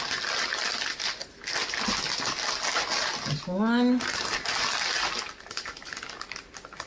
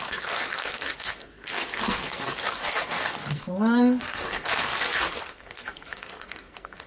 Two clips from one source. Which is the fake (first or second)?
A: second